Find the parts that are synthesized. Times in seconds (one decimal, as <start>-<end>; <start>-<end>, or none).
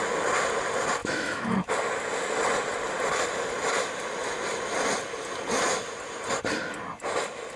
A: 1.0-1.7